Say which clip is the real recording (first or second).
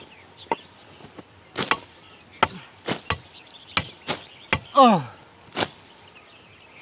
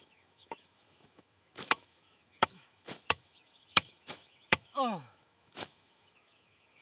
first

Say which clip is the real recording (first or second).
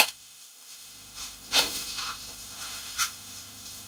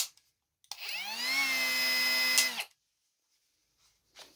second